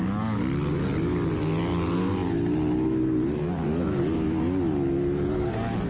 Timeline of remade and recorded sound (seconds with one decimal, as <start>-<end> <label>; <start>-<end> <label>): 0.0-5.9 recorded